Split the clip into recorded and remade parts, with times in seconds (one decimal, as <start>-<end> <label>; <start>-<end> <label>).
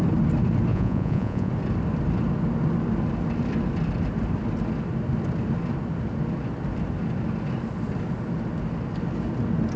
0.0-0.7 recorded; 0.7-1.5 remade; 1.5-9.8 recorded